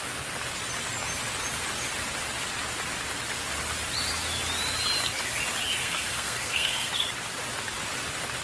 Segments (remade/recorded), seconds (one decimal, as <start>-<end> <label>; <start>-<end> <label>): 0.0-5.8 recorded; 5.8-6.9 remade; 6.9-8.4 recorded